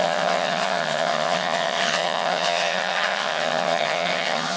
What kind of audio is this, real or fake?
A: fake